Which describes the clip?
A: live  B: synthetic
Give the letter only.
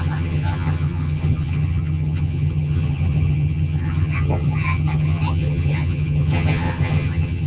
B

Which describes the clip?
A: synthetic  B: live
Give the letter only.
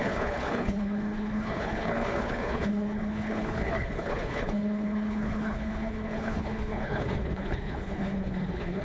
A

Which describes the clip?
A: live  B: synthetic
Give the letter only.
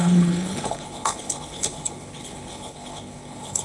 B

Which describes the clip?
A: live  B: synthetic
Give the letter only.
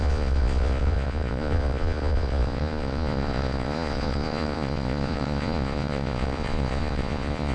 B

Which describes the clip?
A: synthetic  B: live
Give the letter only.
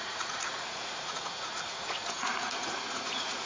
A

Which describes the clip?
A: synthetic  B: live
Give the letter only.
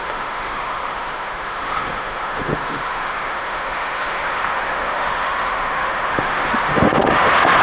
A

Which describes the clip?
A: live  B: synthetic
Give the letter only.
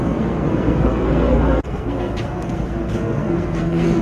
B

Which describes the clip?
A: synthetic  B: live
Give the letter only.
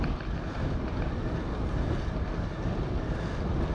B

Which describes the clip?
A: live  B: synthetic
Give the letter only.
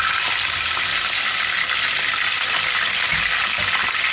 A